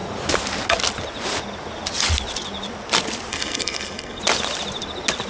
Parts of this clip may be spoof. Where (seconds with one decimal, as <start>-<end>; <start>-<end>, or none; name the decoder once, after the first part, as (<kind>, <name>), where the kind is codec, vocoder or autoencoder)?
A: 3.3-4.2 (codec, SNAC)